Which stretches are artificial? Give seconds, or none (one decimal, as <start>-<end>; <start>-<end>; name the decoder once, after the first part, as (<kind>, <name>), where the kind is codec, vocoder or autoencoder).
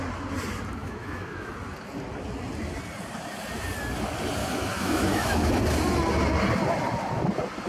0.8-1.5 (autoencoder, DAC-VAE); 4.4-5.5